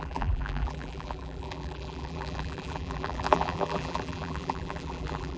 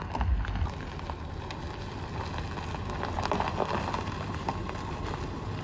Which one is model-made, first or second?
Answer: first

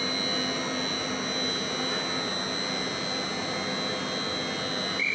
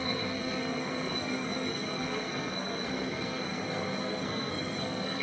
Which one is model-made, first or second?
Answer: second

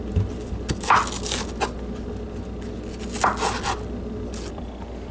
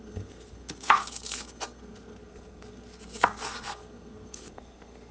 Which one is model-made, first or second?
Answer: second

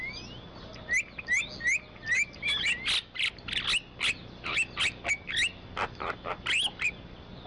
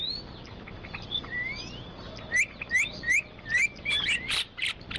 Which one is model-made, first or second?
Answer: second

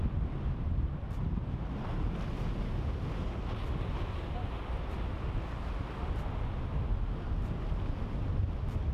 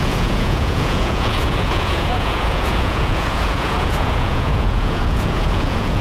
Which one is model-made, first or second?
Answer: second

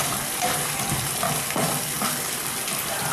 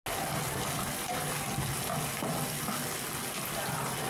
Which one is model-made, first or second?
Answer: first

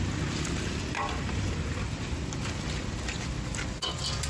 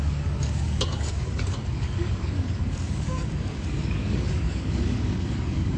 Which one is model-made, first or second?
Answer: second